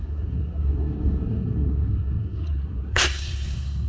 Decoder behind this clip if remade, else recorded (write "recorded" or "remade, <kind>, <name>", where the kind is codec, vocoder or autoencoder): remade, codec, SNAC